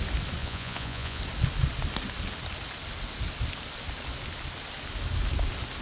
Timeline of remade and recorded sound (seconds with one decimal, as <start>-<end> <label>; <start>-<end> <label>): 0.0-0.4 recorded; 0.4-1.2 remade; 1.2-5.8 recorded